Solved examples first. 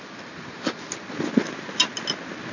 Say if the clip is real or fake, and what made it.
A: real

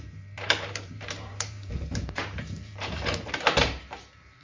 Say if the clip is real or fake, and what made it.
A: fake, vocoder, BigVGAN v2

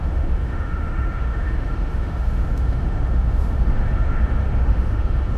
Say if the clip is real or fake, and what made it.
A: fake, autoencoder, DAC-VAE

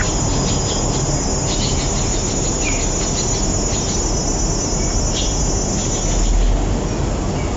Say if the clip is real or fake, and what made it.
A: real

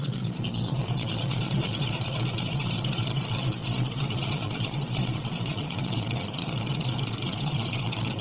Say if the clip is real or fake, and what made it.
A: fake, vocoder, Vocos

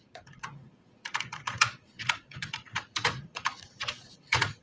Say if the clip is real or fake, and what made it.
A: fake, vocoder, Vocos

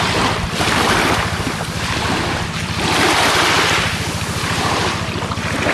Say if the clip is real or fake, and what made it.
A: real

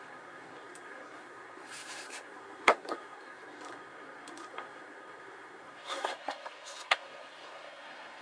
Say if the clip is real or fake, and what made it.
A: fake, codec, SNAC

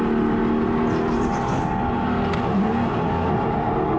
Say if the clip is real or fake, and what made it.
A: real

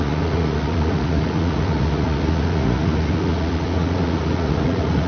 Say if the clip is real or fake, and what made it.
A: fake, vocoder, Vocos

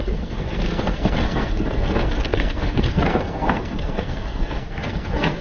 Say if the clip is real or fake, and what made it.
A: fake, codec, SNAC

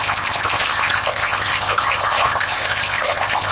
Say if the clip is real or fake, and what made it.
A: fake, codec, ZipCodec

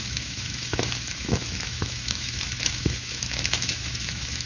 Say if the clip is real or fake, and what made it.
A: fake, autoencoder, DAC-VAE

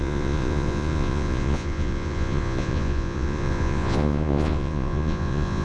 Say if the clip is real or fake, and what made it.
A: fake, vocoder, Vocos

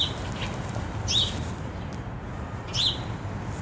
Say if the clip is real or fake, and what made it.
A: real